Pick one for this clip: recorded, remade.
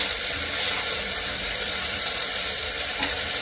remade